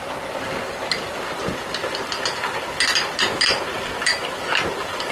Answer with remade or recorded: recorded